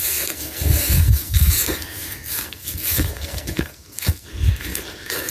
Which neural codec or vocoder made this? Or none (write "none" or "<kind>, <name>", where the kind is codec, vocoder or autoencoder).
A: codec, SNAC